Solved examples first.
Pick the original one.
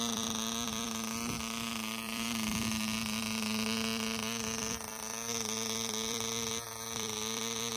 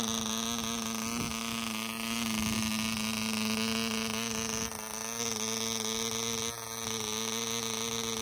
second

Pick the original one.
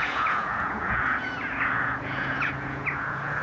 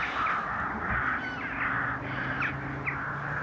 second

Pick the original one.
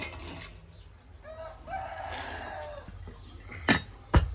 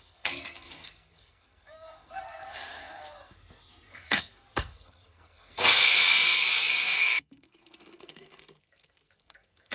first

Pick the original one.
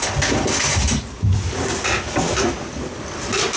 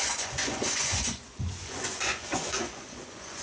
first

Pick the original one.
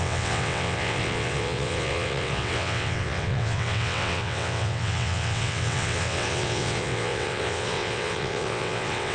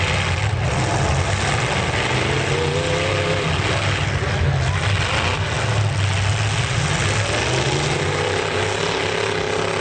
second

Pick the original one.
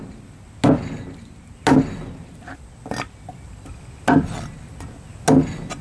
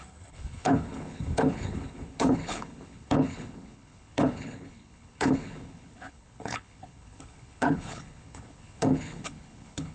first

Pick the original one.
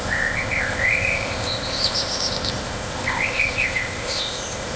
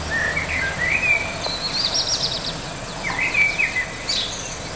second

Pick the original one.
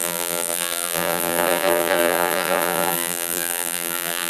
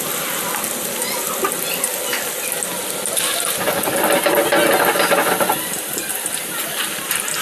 second